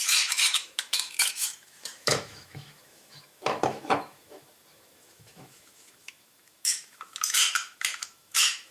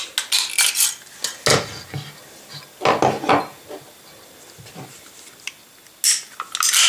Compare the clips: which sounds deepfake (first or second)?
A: first